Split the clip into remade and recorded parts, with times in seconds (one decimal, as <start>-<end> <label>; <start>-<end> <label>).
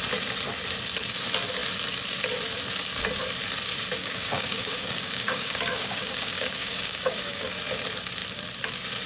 0.0-4.0 recorded; 4.0-7.5 remade; 7.5-9.1 recorded